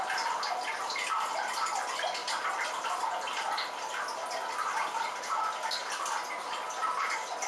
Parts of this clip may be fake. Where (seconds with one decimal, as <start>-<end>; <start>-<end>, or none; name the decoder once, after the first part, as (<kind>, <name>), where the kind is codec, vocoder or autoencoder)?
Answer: 2.2-3.3 (vocoder, BigVGAN v2)